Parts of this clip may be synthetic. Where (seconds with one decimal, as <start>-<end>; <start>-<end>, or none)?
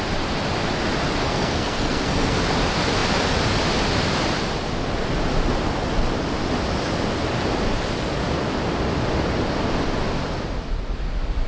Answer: 1.2-2.4